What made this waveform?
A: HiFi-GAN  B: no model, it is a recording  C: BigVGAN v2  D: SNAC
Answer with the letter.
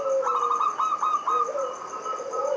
B